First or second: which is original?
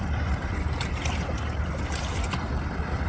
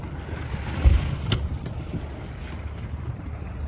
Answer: second